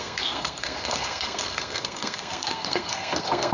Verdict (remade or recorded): remade